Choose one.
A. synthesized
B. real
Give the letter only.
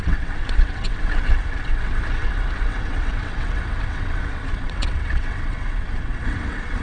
A